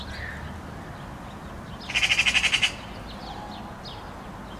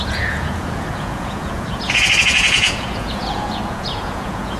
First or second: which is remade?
second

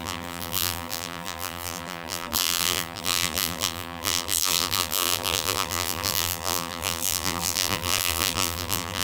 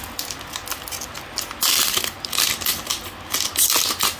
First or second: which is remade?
first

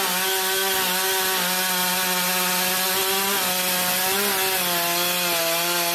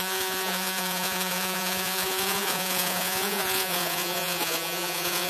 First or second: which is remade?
second